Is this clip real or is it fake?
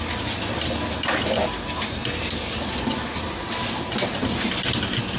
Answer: real